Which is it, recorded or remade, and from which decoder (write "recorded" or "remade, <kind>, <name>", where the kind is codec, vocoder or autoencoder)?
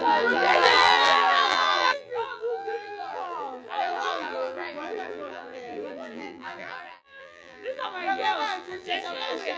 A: remade, vocoder, BigVGAN v2